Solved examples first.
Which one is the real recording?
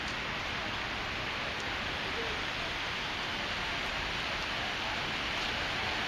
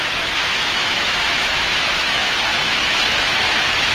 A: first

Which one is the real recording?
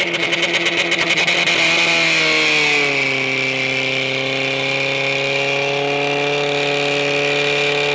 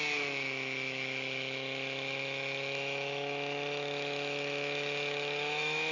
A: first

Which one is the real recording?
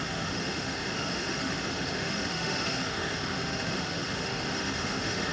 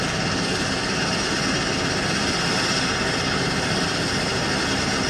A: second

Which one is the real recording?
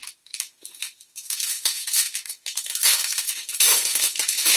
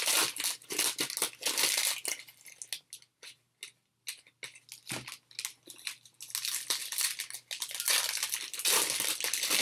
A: second